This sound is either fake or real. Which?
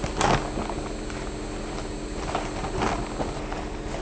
real